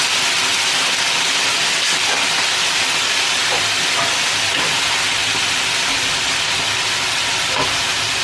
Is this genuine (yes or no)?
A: yes